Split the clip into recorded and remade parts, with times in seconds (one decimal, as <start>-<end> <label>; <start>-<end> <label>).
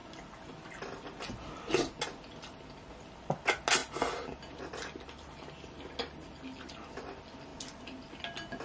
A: 0.0-8.6 recorded